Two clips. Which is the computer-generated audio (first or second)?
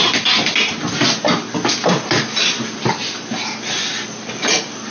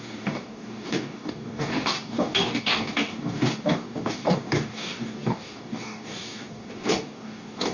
second